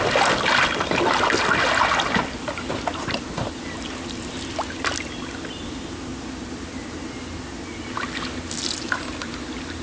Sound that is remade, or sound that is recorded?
recorded